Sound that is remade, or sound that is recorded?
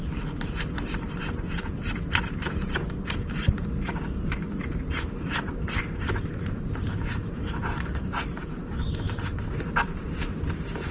remade